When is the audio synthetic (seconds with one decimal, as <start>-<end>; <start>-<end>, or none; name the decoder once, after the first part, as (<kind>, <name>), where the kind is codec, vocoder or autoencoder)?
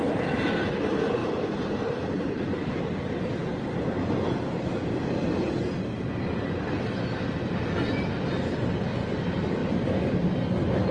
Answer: 1.2-2.8 (vocoder, BigVGAN v2)